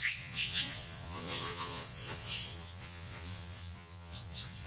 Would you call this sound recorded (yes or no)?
no